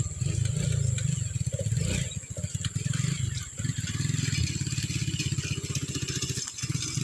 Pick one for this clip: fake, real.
real